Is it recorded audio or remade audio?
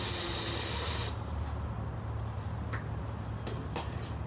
recorded